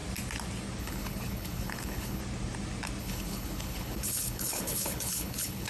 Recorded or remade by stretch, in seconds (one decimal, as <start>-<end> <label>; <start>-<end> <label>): 0.0-0.8 recorded; 0.8-2.2 remade; 2.2-3.0 recorded; 3.0-5.7 remade